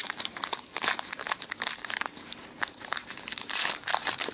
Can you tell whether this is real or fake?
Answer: fake